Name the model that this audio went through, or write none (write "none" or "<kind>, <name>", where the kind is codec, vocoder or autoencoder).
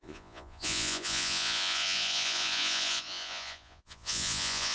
vocoder, Vocos